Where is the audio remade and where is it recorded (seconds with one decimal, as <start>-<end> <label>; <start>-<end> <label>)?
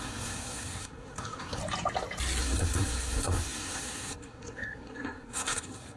0.0-1.6 remade; 1.6-2.4 recorded; 2.4-6.0 remade